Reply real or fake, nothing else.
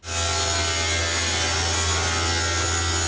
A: real